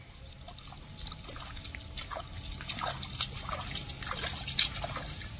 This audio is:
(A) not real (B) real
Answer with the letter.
B